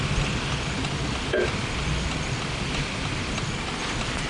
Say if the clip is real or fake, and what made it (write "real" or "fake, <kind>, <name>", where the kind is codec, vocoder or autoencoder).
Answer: real